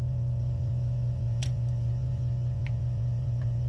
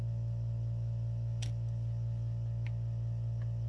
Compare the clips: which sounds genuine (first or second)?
second